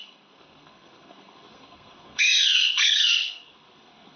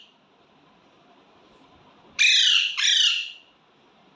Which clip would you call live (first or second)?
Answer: second